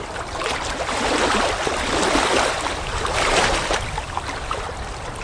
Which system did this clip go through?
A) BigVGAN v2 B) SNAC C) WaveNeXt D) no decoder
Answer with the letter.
A